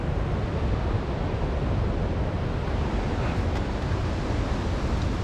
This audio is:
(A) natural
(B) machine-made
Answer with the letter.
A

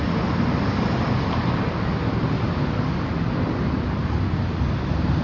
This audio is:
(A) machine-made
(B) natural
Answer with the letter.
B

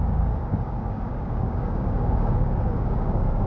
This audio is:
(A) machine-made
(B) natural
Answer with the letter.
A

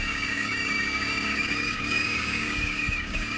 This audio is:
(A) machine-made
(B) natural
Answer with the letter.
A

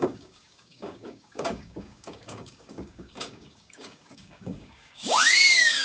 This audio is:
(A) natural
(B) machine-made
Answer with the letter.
B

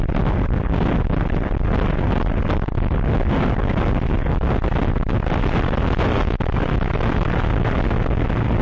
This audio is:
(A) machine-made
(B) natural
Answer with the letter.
B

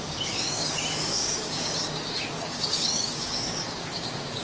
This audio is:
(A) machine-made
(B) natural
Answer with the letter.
A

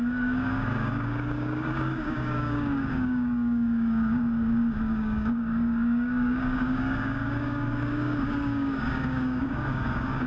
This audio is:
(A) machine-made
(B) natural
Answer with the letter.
A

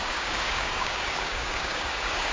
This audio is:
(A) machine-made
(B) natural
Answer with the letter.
A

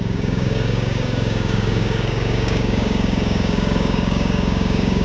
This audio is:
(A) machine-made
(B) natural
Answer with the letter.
A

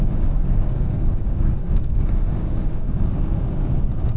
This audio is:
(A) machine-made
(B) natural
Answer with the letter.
A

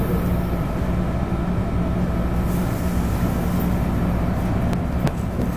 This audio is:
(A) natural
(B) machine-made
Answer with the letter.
A